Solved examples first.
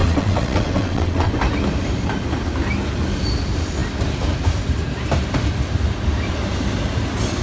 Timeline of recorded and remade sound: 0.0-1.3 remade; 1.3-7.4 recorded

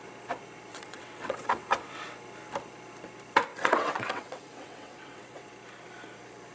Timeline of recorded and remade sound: 0.0-0.7 recorded; 0.7-2.0 remade; 2.0-3.5 recorded; 3.5-5.5 remade; 5.5-6.5 recorded

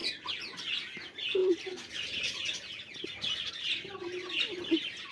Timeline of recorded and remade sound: 0.0-5.1 recorded

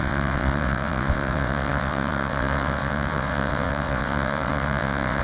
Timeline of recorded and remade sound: 0.0-5.2 remade

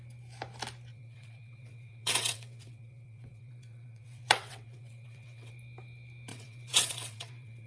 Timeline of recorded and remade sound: 0.0-0.9 recorded; 0.9-5.5 remade; 5.5-6.3 recorded; 6.3-7.7 remade

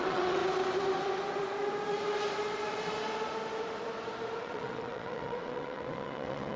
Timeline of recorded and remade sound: 0.0-0.4 remade; 0.4-4.4 recorded; 4.4-6.6 remade

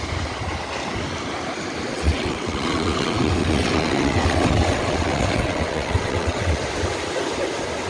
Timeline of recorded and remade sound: 0.0-1.9 recorded; 1.9-6.6 remade; 6.6-7.9 recorded